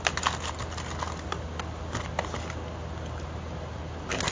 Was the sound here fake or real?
real